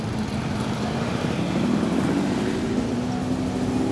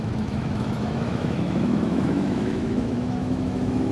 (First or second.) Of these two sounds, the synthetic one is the second